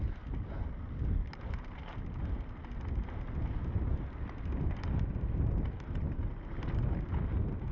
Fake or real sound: real